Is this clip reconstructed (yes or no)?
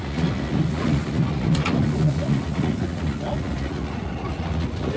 yes